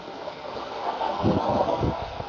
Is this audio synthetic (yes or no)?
yes